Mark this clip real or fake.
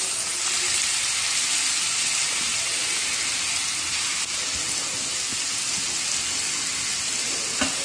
real